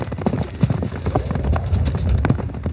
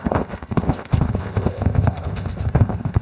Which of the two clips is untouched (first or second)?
first